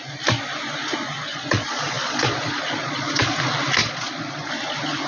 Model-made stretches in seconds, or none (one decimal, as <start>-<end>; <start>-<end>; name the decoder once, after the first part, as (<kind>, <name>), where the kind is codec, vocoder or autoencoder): 1.2-3.4 (vocoder, Vocos); 3.8-4.5